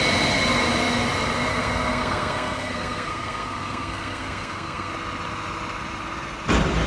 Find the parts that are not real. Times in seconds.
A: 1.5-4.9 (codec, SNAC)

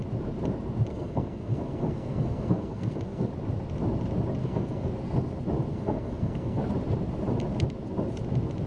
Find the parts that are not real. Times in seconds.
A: 0.9-3.3 (codec, SNAC); 4.4-4.9; 5.7-6.6